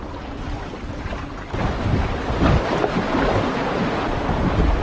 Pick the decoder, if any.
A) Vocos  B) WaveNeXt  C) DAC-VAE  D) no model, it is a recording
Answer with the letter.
D